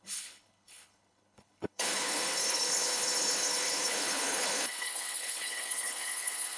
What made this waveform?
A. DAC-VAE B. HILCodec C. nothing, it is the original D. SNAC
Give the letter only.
B